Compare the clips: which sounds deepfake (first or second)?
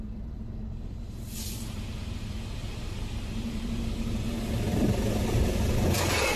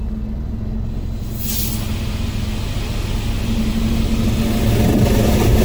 first